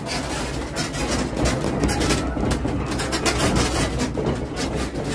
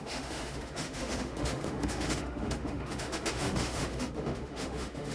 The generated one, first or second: second